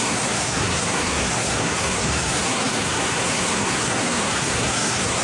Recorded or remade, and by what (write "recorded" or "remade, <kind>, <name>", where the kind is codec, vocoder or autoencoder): remade, codec, SNAC